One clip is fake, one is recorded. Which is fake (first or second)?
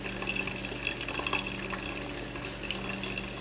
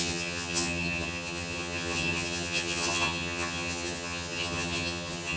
second